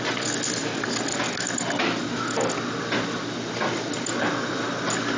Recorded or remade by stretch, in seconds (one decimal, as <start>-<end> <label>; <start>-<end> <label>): 0.0-5.2 recorded